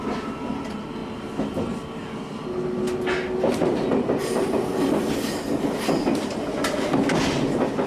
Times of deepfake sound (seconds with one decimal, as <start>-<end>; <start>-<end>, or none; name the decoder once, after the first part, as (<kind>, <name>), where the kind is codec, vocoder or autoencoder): none